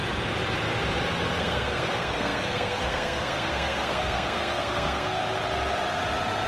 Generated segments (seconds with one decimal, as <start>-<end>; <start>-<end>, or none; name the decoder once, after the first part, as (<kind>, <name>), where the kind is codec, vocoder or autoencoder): 1.4-5.2 (codec, SNAC)